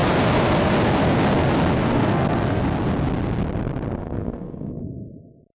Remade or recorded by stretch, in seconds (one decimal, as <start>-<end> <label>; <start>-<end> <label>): 0.0-1.8 recorded; 1.8-2.6 remade; 2.6-4.0 recorded; 4.0-4.8 remade; 4.8-5.6 recorded